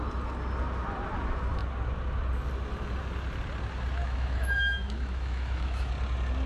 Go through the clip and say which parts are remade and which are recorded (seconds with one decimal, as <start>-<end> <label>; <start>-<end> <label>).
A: 0.0-4.0 recorded; 4.0-5.9 remade; 5.9-6.5 recorded